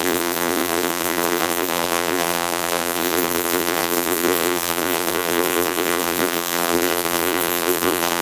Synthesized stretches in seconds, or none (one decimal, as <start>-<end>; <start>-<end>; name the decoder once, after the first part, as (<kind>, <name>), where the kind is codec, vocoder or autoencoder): 0.0-8.2 (vocoder, BigVGAN v2)